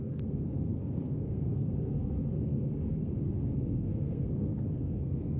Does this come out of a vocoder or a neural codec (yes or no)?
yes